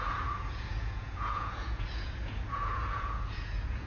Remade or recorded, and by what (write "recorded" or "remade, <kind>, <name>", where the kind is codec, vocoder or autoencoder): remade, vocoder, Vocos